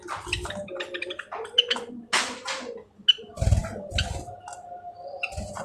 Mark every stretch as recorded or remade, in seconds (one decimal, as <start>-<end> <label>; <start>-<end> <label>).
0.0-5.6 recorded